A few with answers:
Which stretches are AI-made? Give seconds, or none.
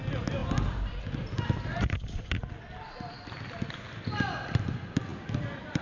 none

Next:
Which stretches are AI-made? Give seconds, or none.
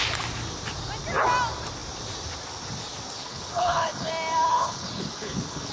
3.2-4.1 (codec, HILCodec); 4.5-5.7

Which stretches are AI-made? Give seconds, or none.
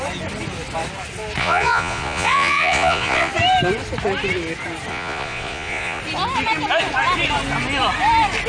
1.4-3.3 (vocoder, Vocos); 4.9-6.0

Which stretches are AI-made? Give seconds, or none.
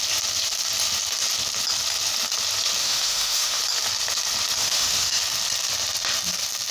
2.8-3.6 (autoencoder, DAC-VAE); 4.6-5.2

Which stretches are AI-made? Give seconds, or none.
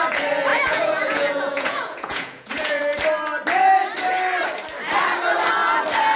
0.5-2.8 (vocoder, Vocos)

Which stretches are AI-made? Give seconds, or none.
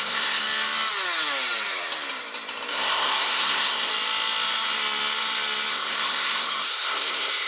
0.0-0.4 (codec, SNAC); 2.7-3.9; 5.7-7.5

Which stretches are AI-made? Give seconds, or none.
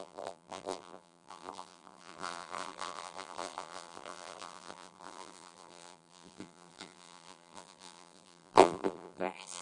0.0-9.6 (vocoder, BigVGAN v2)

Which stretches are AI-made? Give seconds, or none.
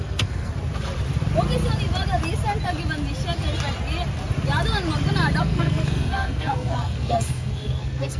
0.0-0.5 (codec, SNAC); 5.4-8.2